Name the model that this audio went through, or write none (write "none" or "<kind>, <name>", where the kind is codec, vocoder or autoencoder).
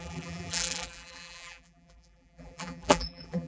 vocoder, BigVGAN v2